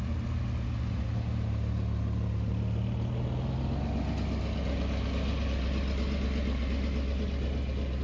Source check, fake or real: real